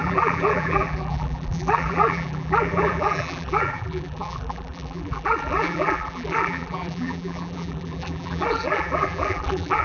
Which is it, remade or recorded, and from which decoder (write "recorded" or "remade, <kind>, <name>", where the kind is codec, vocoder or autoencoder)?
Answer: remade, vocoder, BigVGAN v2